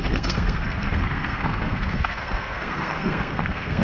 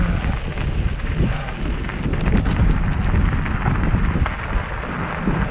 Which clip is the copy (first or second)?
first